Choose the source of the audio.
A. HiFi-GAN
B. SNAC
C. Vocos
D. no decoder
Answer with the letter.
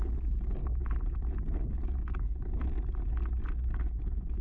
D